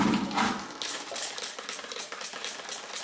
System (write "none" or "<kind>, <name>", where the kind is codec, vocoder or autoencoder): none